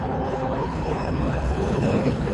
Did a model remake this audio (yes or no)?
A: yes